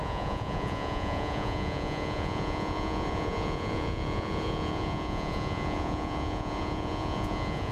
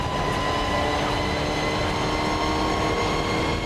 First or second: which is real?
second